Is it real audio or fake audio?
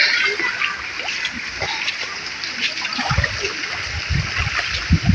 real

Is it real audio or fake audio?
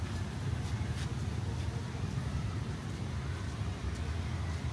real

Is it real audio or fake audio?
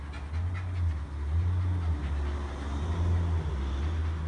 real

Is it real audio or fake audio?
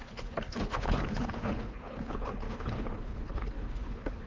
fake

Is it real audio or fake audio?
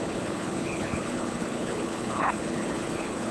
fake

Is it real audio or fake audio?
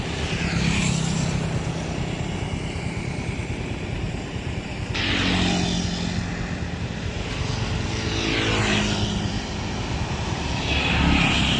real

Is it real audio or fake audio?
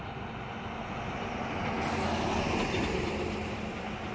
real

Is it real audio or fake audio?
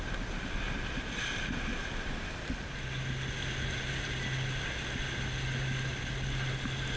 real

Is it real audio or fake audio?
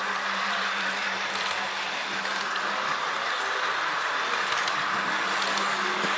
real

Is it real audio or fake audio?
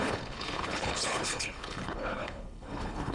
fake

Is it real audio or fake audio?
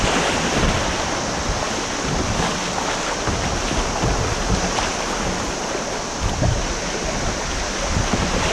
real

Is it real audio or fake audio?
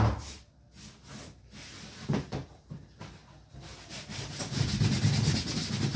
real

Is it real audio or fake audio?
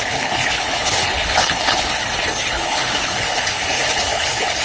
fake